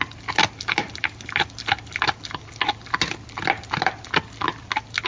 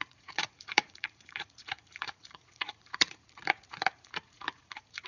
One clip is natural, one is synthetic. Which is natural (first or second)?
first